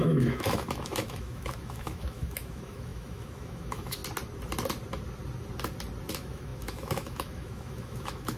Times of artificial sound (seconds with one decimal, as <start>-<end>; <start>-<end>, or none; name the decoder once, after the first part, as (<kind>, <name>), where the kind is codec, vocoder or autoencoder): 0.0-4.0 (autoencoder, DAC-VAE); 6.1-8.4